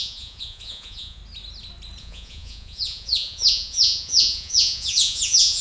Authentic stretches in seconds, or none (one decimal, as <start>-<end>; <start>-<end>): 1.2-2.0